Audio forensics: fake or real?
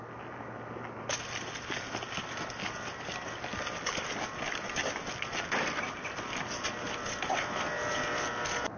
real